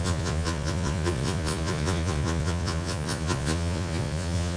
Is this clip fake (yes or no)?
yes